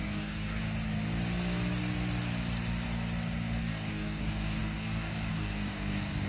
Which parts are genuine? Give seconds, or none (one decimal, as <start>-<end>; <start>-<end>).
0.6-3.6